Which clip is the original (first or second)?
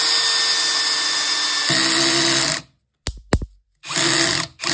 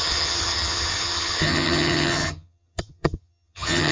first